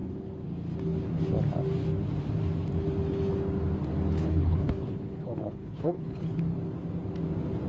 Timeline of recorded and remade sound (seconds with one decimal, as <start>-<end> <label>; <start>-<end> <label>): 0.0-4.2 recorded; 4.2-6.4 remade; 6.4-7.7 recorded